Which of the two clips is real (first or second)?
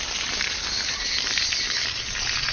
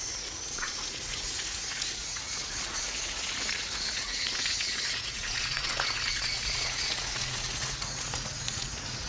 first